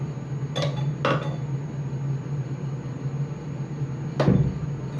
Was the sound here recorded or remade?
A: recorded